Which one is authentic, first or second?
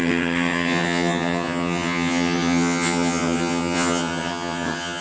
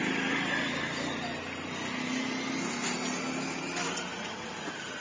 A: second